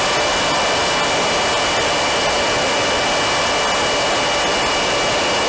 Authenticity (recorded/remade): recorded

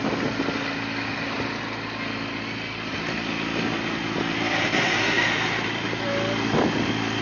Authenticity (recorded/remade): recorded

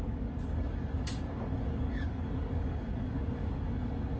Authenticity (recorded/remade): remade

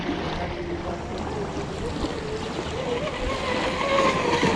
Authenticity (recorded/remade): recorded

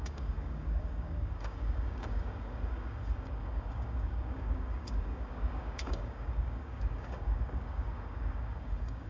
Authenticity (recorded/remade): remade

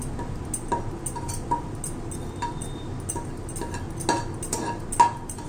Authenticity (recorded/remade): recorded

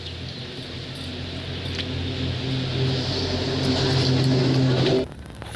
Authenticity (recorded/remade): recorded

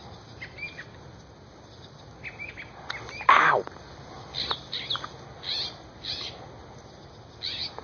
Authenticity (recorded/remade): recorded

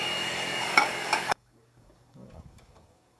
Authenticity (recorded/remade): remade